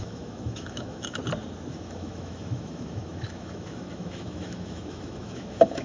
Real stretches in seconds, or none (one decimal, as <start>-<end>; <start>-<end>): 1.2-1.7